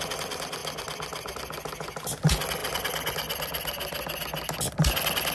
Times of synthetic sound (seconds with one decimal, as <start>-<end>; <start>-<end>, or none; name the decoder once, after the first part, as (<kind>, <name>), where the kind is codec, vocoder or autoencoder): none